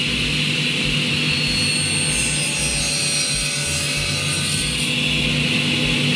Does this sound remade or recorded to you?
recorded